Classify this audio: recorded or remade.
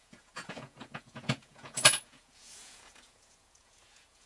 remade